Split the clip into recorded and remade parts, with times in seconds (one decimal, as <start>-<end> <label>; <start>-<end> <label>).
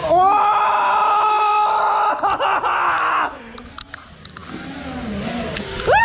0.0-6.0 recorded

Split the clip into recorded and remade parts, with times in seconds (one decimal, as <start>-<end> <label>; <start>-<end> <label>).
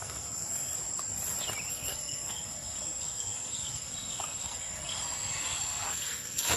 0.0-0.7 remade; 0.7-1.7 recorded; 1.7-6.6 remade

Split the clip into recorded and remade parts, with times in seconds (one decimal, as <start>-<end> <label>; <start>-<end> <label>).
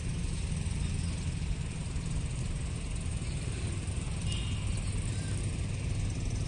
0.0-6.5 recorded